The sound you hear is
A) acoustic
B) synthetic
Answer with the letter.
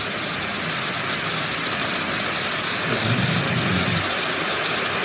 A